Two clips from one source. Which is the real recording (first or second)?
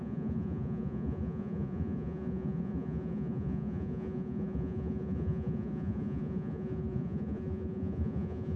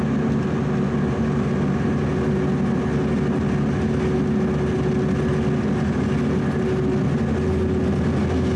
second